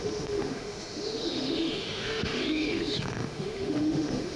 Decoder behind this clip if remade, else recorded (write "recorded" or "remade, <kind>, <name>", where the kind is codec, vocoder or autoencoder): remade, autoencoder, DAC-VAE